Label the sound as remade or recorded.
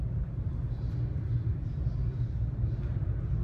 recorded